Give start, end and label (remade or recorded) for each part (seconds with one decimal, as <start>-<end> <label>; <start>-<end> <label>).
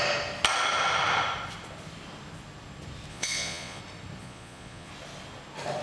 0.0-3.1 recorded; 3.1-3.8 remade; 3.8-4.2 recorded; 4.2-4.9 remade; 4.9-5.8 recorded